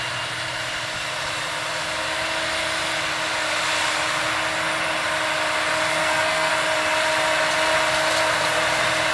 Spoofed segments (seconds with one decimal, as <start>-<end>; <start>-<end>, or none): 6.0-6.5